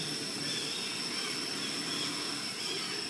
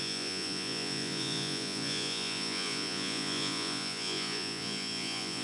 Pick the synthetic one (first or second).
second